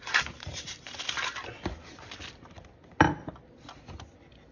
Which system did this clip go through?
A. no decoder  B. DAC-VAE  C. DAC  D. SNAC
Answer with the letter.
A